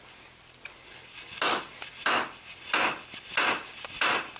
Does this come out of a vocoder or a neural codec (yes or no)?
no